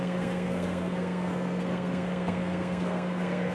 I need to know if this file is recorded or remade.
remade